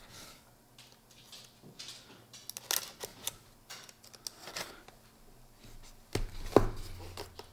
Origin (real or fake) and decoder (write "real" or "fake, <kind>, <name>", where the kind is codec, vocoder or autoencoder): real